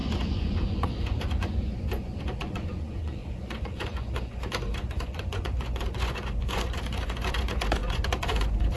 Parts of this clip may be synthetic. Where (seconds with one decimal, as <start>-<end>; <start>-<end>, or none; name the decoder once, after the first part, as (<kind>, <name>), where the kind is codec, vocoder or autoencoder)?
0.0-8.8 (vocoder, Vocos)

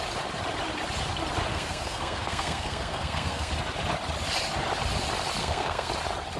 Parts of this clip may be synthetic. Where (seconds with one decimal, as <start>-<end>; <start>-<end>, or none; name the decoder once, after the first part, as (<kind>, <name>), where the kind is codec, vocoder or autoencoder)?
1.5-3.5 (codec, SNAC); 5.4-5.9

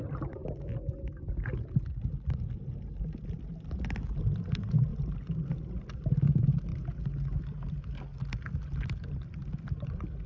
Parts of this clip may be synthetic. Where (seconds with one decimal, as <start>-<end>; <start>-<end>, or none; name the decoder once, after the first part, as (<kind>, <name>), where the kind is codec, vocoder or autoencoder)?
none

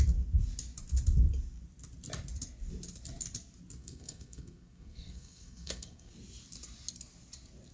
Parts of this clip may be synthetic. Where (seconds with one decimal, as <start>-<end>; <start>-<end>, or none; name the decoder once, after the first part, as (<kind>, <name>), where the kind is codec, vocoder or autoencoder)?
3.8-6.1 (codec, SNAC)

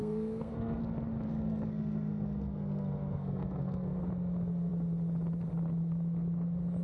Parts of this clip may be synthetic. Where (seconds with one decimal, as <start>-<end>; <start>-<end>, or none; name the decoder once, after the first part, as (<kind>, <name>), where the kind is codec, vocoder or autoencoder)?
0.0-0.8 (codec, SNAC); 1.3-4.1

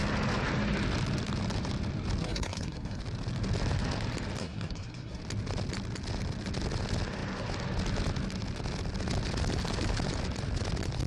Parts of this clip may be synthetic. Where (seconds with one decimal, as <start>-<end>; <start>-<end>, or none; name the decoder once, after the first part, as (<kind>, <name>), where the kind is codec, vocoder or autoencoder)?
2.2-3.0 (codec, SNAC); 4.4-5.2

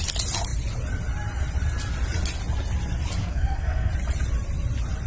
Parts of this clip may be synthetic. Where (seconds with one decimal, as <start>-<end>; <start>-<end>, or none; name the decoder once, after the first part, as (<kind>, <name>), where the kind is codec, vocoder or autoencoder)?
3.2-3.9 (codec, SNAC)

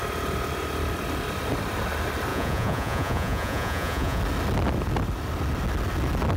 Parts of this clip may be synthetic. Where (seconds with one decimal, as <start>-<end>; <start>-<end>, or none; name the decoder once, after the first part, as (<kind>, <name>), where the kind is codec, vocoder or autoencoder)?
2.3-4.2 (vocoder, Vocos)